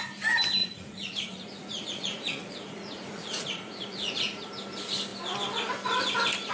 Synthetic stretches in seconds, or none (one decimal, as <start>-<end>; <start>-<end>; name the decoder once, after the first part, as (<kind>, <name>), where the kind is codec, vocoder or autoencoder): 0.6-4.5 (vocoder, Vocos)